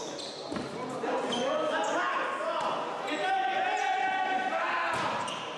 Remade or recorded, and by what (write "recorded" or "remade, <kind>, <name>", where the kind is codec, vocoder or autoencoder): recorded